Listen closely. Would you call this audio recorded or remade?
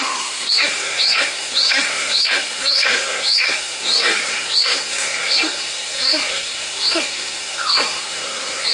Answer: remade